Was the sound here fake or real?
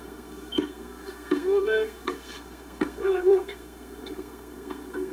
fake